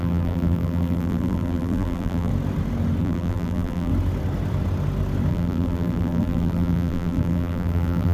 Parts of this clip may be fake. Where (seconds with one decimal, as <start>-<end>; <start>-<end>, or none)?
0.0-2.3; 3.0-3.9; 5.3-8.1